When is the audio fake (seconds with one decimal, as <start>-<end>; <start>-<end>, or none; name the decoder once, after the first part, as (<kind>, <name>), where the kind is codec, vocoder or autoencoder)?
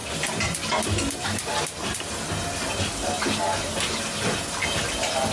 none